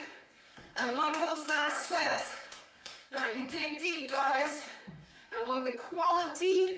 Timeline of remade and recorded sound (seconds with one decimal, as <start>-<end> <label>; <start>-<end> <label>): 0.0-6.8 remade